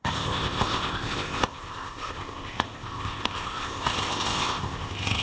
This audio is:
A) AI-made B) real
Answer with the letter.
A